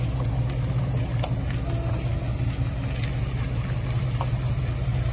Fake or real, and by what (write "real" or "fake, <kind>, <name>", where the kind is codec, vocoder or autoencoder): real